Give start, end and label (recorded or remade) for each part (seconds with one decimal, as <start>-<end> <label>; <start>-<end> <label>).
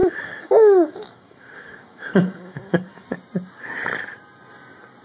0.0-3.0 remade; 3.0-5.0 recorded